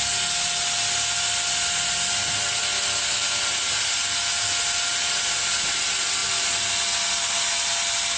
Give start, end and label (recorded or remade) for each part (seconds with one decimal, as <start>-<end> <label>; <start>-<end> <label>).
0.0-8.2 recorded